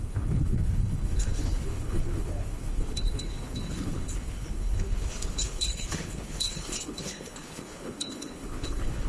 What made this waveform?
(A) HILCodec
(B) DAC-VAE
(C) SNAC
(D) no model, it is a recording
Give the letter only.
A